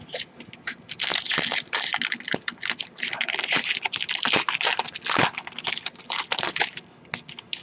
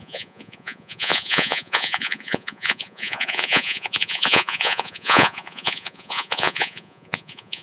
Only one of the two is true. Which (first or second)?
first